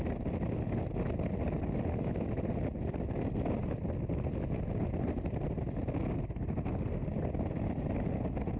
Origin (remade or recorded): recorded